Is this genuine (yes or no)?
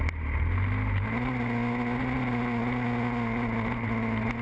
yes